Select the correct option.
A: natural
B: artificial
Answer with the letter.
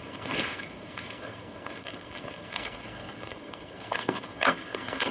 B